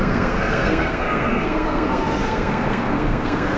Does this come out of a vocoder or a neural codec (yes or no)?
yes